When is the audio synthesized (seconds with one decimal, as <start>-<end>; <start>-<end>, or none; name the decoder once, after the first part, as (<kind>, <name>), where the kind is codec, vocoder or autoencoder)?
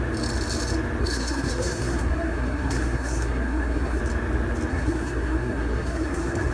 1.0-4.0 (codec, SNAC); 4.7-6.5